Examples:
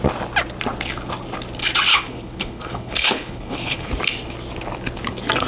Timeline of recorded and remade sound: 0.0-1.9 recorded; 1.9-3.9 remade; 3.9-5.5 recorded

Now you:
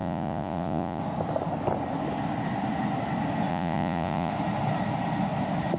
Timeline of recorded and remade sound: 0.0-1.0 remade; 1.0-3.5 recorded; 3.5-4.3 remade; 4.3-5.8 recorded

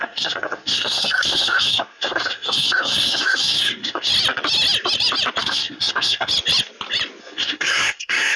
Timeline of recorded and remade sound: 0.0-4.1 remade; 4.1-5.4 recorded; 5.4-6.3 remade; 6.3-7.2 recorded; 7.2-8.4 remade

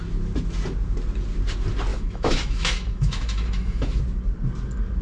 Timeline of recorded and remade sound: 0.0-1.9 recorded; 1.9-4.0 remade; 4.0-5.0 recorded

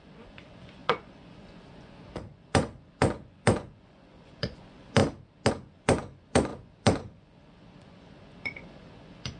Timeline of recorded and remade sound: 0.0-5.0 remade; 5.0-5.5 recorded; 5.5-9.4 remade

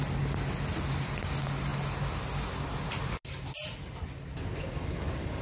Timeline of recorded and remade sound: 0.0-5.4 recorded

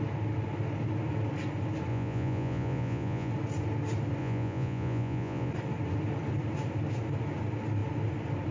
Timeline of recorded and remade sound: 0.0-1.9 recorded; 1.9-3.3 remade; 3.3-4.2 recorded; 4.2-5.5 remade; 5.5-8.5 recorded

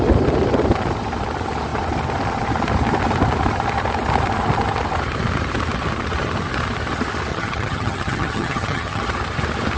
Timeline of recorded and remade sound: 0.0-7.3 recorded; 7.3-9.0 remade; 9.0-9.8 recorded